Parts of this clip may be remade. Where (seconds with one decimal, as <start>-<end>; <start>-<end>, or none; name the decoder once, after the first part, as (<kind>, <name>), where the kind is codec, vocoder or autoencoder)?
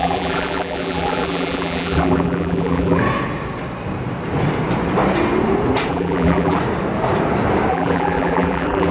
0.0-3.0 (vocoder, BigVGAN v2); 5.9-6.6; 7.7-8.9